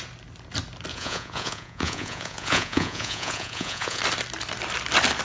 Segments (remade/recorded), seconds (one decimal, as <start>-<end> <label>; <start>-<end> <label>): 0.0-0.9 recorded; 0.9-4.0 remade; 4.0-5.2 recorded